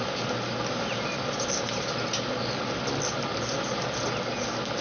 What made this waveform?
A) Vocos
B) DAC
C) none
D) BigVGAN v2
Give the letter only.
C